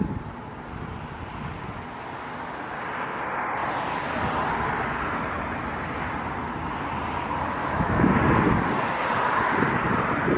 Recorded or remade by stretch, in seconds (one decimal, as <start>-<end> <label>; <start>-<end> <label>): 0.0-7.6 recorded; 7.6-8.1 remade; 8.1-10.4 recorded